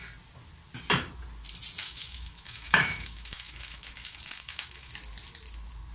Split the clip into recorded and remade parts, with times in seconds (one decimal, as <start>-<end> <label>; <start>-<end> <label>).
0.0-1.8 recorded; 1.8-4.9 remade; 4.9-5.9 recorded